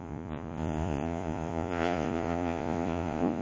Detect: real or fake fake